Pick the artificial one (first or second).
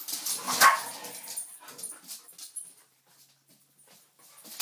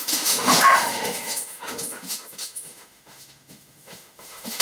second